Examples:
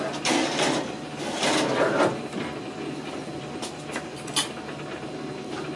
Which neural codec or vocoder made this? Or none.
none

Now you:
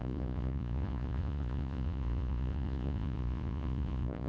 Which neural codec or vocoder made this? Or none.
vocoder, Vocos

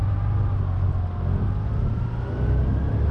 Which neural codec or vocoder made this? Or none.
none